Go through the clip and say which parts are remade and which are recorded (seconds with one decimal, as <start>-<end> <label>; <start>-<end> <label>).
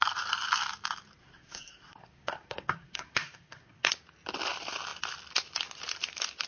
0.0-1.2 recorded; 1.2-3.9 remade; 3.9-6.5 recorded